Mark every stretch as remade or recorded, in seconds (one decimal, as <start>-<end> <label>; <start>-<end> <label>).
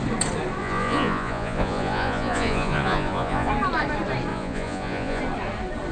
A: 0.0-0.6 recorded; 0.6-3.5 remade; 3.5-4.3 recorded; 4.3-5.2 remade; 5.2-5.9 recorded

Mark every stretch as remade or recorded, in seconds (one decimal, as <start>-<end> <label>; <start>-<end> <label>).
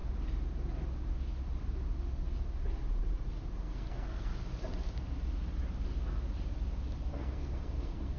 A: 0.0-3.6 recorded; 3.6-4.3 remade; 4.3-7.1 recorded; 7.1-8.2 remade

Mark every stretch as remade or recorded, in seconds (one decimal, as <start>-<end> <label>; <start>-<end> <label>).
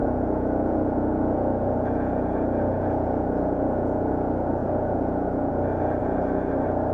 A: 0.0-4.1 remade; 4.1-4.6 recorded; 4.6-5.5 remade; 5.5-6.0 recorded; 6.0-6.5 remade; 6.5-6.9 recorded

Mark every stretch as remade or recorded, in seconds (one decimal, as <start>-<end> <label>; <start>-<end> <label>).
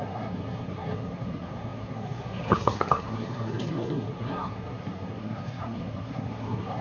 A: 0.0-6.8 remade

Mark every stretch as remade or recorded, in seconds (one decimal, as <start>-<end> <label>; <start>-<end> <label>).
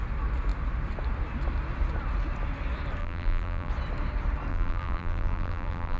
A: 0.0-3.0 recorded; 3.0-3.7 remade; 3.7-4.5 recorded; 4.5-6.0 remade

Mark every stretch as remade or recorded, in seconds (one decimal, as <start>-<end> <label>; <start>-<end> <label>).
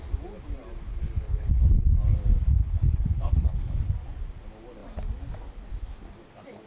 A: 0.0-0.9 recorded; 0.9-2.0 remade; 2.0-2.6 recorded; 2.6-3.9 remade; 3.9-6.7 recorded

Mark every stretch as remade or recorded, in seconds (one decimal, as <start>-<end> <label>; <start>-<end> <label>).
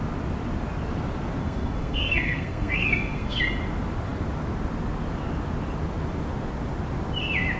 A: 0.0-1.4 recorded; 1.4-3.4 remade; 3.4-7.6 recorded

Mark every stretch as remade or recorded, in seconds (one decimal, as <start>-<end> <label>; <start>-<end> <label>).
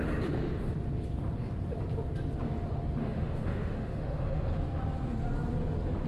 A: 0.0-3.0 recorded; 3.0-4.6 remade; 4.6-6.1 recorded